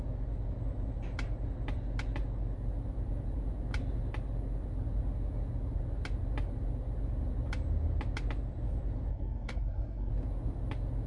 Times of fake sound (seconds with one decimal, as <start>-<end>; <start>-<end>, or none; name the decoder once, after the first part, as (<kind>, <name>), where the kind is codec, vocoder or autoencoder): 9.1-10.1 (codec, SNAC)